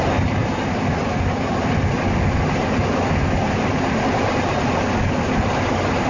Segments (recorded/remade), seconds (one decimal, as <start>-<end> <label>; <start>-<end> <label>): 0.0-6.1 recorded

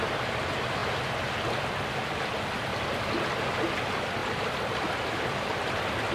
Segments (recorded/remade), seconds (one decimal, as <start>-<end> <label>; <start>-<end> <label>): 0.0-2.7 recorded; 2.7-3.5 remade; 3.5-4.2 recorded; 4.2-6.1 remade

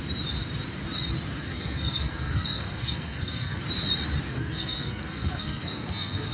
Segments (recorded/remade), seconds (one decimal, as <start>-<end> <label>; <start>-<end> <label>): 0.0-1.4 recorded; 1.4-3.6 remade; 3.6-4.3 recorded; 4.3-6.3 remade